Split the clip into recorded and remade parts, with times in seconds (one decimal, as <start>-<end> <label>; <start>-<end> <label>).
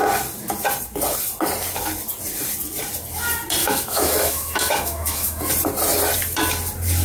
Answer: 0.0-3.6 recorded; 3.6-5.5 remade; 5.5-7.0 recorded